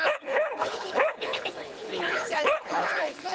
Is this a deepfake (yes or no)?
yes